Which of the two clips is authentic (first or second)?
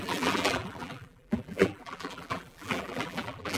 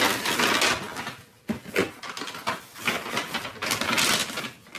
second